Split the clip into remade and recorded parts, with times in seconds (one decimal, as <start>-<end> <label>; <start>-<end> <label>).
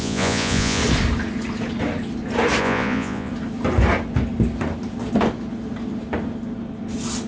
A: 0.0-0.8 remade; 0.8-2.6 recorded; 2.6-3.3 remade; 3.3-7.3 recorded